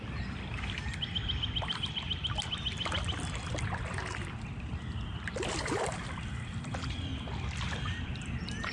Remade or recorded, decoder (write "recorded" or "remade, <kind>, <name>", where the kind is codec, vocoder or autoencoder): recorded